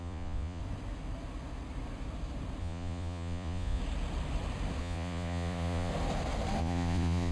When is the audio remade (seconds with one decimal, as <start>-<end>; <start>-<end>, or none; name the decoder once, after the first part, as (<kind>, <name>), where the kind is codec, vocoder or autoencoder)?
0.0-0.6 (vocoder, Vocos); 2.6-3.8; 4.8-5.9; 6.6-7.3